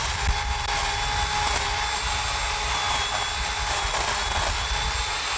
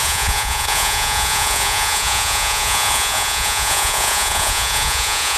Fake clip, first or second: second